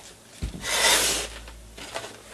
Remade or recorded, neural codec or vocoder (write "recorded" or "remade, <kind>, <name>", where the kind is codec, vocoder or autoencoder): recorded